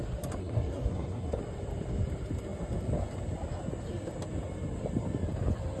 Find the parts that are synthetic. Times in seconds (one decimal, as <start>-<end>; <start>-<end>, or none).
0.4-1.4